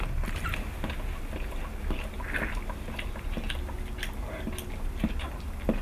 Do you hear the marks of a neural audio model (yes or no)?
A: no